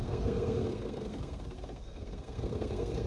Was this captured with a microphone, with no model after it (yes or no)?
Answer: no